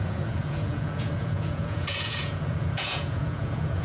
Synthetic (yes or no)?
yes